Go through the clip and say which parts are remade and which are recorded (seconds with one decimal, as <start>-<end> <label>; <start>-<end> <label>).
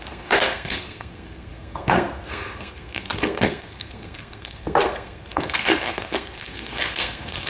0.0-7.5 remade